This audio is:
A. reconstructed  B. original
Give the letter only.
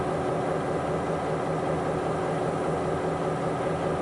B